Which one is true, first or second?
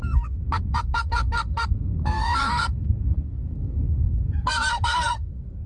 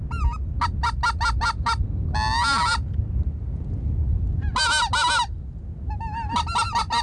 second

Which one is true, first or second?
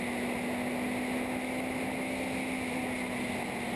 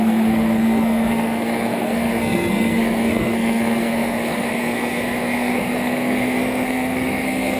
first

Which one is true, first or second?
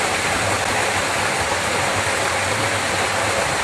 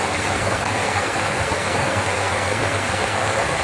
first